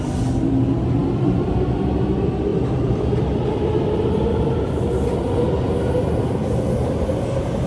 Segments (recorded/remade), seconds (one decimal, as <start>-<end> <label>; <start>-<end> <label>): 0.0-1.0 recorded; 1.0-1.9 remade; 1.9-2.5 recorded; 2.5-4.9 remade; 4.9-7.7 recorded